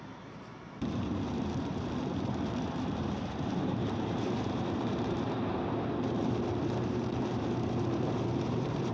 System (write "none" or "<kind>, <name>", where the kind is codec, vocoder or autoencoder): vocoder, BigVGAN v2